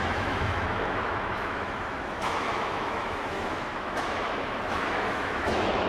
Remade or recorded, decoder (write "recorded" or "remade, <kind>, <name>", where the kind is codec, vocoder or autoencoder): remade, autoencoder, DAC-VAE